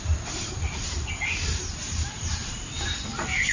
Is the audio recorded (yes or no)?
no